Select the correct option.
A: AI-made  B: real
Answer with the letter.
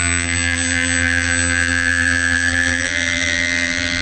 A